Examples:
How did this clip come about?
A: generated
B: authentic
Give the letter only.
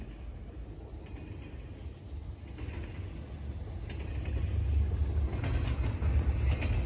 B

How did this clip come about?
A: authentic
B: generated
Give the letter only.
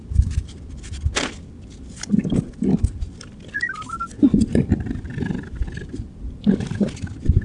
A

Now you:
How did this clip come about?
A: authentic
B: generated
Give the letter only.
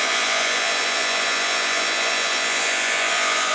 B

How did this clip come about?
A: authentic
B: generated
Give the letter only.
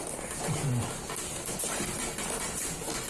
A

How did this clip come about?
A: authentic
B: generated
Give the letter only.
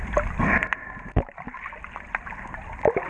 A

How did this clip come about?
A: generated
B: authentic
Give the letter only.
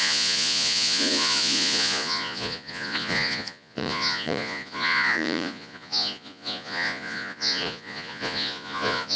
A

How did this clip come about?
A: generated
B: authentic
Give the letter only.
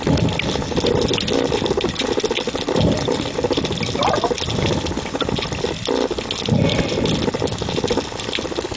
B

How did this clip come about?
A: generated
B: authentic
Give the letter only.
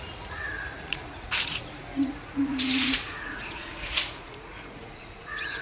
A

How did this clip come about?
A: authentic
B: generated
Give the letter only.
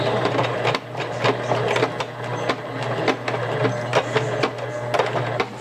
A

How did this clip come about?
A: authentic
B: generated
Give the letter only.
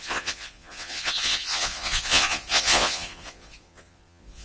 B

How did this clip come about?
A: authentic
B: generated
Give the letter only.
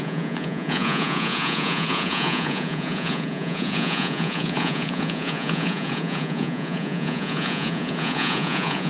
B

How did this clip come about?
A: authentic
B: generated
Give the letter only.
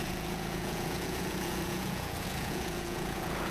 B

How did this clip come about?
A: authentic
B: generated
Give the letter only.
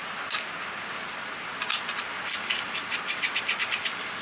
A